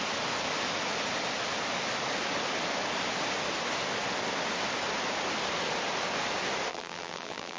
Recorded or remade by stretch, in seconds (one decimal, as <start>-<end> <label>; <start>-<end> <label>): 0.0-6.7 recorded; 6.7-7.6 remade